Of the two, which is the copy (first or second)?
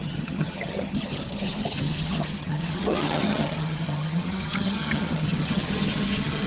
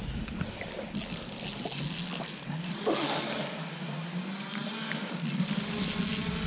first